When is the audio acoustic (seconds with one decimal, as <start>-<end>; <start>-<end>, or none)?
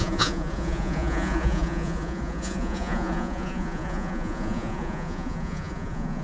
none